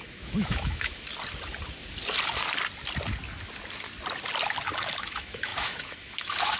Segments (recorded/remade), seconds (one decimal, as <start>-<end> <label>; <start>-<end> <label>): 0.0-1.1 remade; 1.1-5.0 recorded; 5.0-6.6 remade